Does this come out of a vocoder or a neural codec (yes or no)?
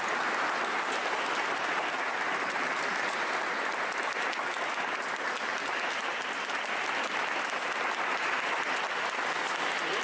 no